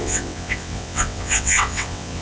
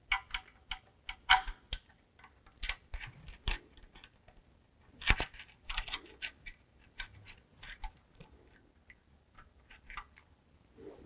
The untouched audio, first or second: second